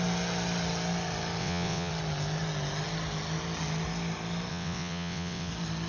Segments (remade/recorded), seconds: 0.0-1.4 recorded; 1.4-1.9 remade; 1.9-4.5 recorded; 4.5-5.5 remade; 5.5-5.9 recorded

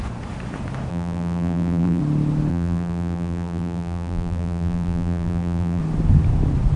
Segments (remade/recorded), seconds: 0.0-0.9 recorded; 0.9-2.0 remade; 2.0-2.5 recorded; 2.5-5.8 remade; 5.8-6.8 recorded

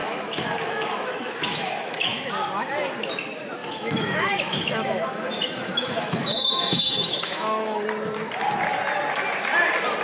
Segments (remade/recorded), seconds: 0.0-2.3 remade; 2.3-3.6 recorded; 3.6-7.8 remade; 7.8-10.0 recorded